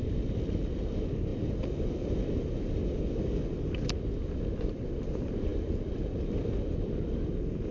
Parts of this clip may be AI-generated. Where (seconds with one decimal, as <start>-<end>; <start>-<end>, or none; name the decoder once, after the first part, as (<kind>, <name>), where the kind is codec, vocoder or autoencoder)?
none